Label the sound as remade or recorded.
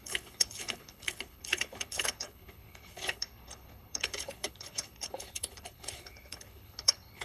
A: remade